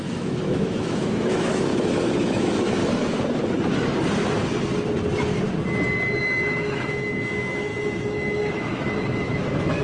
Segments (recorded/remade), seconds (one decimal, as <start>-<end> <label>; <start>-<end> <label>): 0.0-2.8 remade; 2.8-6.2 recorded; 6.2-9.8 remade

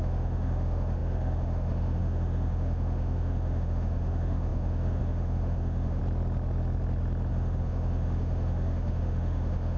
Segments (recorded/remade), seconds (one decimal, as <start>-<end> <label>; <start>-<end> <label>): 0.0-6.0 remade; 6.0-7.3 recorded; 7.3-9.8 remade